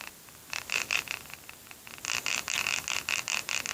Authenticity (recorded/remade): recorded